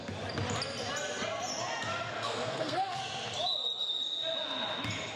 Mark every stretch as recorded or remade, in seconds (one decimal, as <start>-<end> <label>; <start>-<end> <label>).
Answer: 0.0-1.9 recorded; 1.9-3.0 remade; 3.0-5.2 recorded